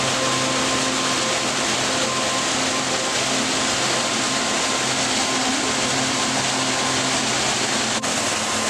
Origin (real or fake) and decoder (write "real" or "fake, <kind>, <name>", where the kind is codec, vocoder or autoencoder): real